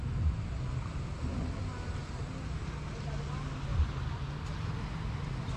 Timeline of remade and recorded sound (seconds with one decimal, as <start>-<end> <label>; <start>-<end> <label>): 0.0-5.6 recorded